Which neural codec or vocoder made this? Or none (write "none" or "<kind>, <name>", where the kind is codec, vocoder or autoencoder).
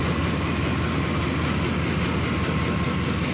none